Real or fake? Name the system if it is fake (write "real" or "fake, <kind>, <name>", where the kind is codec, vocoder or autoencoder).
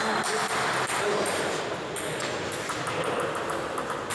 real